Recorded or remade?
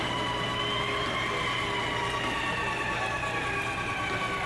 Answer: recorded